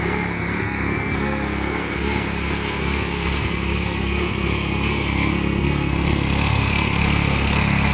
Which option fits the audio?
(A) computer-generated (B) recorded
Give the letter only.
A